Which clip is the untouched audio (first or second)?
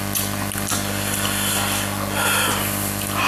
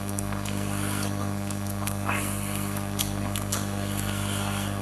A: first